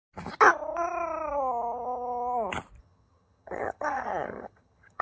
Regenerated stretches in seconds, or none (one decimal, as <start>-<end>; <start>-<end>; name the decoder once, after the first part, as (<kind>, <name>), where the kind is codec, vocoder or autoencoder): 2.8-5.0 (vocoder, HiFi-GAN)